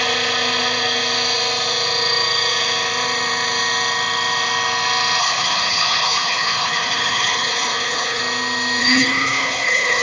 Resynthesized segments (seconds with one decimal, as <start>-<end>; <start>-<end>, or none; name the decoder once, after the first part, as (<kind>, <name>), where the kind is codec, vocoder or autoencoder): 5.2-8.2 (codec, HILCodec); 8.8-10.0